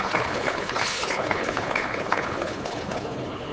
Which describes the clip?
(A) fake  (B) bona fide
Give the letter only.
A